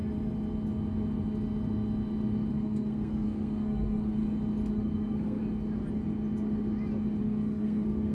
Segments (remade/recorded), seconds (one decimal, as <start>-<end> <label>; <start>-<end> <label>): 0.0-2.5 recorded; 2.5-4.2 remade; 4.2-4.7 recorded; 4.7-5.4 remade; 5.4-7.2 recorded; 7.2-8.1 remade